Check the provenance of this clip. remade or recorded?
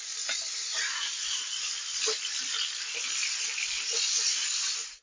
recorded